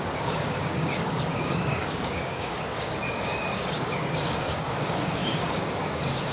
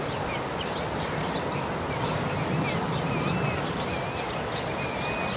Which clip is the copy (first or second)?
first